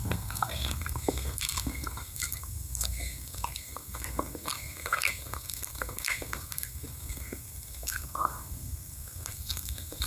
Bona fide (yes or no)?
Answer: no